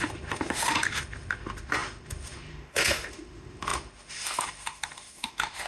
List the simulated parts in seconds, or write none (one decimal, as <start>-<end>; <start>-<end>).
0.0-5.7